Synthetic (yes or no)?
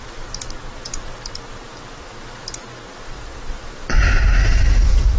no